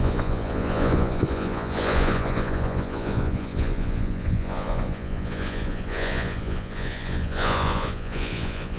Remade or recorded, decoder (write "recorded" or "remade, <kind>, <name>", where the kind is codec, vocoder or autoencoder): remade, vocoder, Vocos